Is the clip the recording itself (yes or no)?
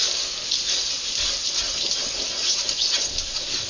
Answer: yes